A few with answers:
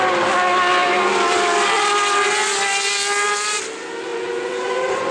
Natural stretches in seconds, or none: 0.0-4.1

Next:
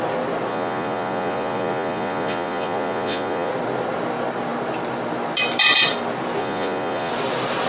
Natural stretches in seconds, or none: 0.0-0.5; 3.5-6.4; 7.1-7.7

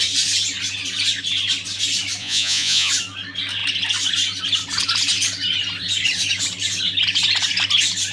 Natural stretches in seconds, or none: 0.0-2.2; 2.9-8.1

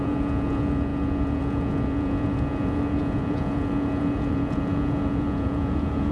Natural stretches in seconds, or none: none

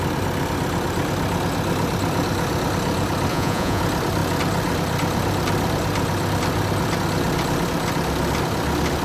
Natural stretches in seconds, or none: 0.0-3.3; 3.8-9.0

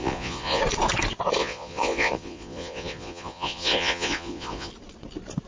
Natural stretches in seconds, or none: 0.6-1.4; 4.7-5.5

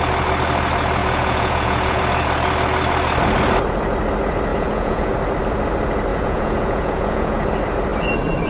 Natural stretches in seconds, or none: 0.0-1.0; 2.0-4.5; 5.1-6.1; 7.5-8.5